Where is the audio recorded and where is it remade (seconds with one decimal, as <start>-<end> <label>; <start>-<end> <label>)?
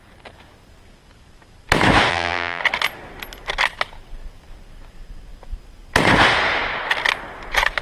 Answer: 0.0-2.1 recorded; 2.1-2.6 remade; 2.6-7.8 recorded